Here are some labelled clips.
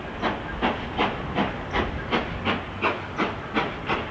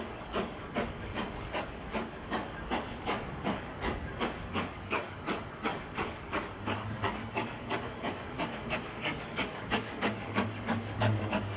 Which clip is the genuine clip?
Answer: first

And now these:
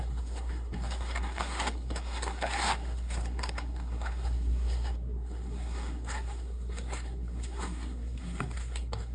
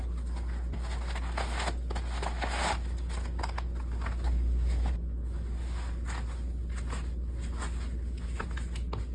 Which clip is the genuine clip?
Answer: second